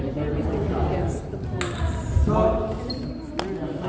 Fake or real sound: real